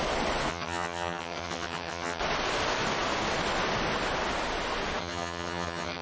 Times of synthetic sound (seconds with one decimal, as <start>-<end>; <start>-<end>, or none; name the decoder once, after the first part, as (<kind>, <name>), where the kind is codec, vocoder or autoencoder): 0.5-2.2 (vocoder, HiFi-GAN); 5.0-6.0